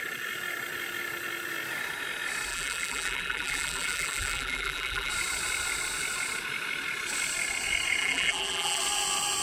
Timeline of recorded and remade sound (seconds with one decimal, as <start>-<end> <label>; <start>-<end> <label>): 0.0-2.5 recorded; 2.5-5.1 remade; 5.1-8.0 recorded; 8.0-8.8 remade; 8.8-9.4 recorded